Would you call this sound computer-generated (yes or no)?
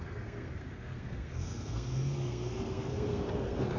yes